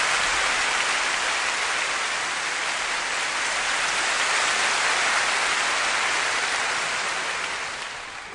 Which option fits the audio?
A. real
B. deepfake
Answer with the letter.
A